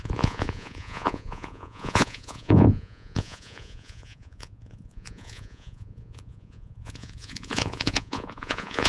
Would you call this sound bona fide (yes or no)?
no